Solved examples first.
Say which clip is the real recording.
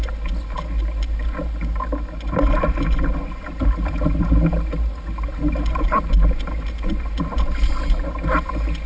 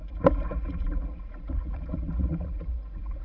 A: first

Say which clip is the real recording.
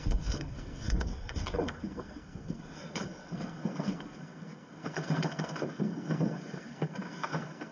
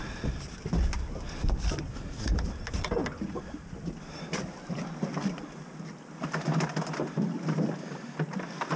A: second